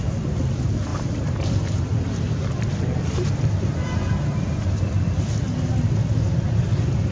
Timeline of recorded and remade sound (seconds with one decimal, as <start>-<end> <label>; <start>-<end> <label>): 0.0-7.1 recorded